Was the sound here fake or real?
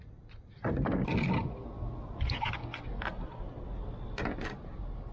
real